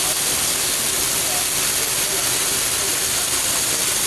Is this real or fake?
real